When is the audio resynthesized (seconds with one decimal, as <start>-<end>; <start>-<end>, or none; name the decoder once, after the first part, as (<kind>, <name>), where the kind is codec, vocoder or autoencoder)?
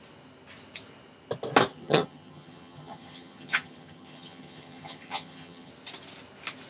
1.7-5.7 (vocoder, HiFi-GAN)